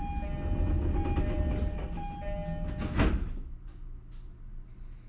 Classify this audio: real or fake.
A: real